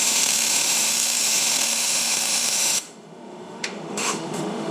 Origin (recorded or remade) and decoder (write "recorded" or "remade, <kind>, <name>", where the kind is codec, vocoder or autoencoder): remade, autoencoder, DAC-VAE